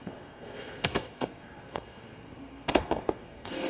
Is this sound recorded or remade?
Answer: remade